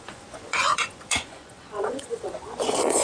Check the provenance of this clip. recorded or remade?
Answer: remade